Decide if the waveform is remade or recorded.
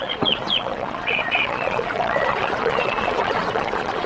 remade